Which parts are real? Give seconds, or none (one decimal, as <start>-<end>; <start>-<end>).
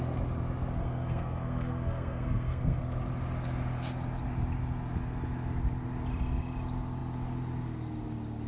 0.0-0.8; 2.8-8.5